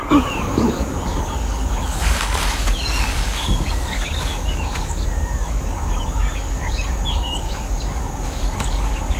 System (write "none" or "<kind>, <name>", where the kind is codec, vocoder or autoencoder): codec, DAC